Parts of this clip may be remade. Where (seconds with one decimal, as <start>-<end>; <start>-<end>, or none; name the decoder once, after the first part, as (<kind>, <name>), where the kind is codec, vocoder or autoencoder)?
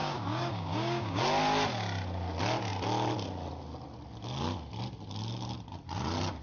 0.0-1.2 (codec, DAC)